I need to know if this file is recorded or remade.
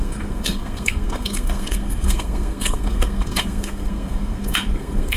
remade